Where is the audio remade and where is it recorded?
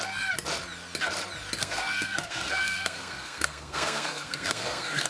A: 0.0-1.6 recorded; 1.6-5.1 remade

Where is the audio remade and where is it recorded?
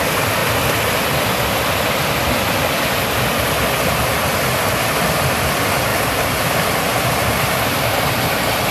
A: 0.0-8.7 recorded